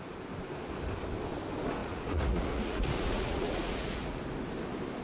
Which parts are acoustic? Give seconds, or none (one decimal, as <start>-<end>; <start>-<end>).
0.0-1.8; 4.2-5.0